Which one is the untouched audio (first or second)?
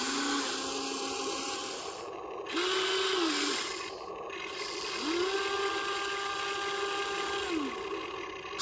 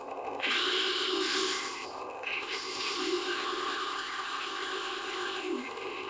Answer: first